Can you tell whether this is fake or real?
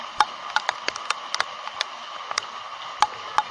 real